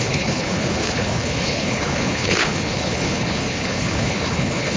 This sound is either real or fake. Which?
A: fake